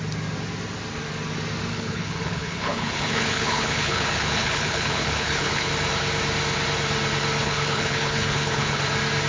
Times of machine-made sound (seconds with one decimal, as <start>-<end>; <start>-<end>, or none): 1.7-5.7; 7.4-8.8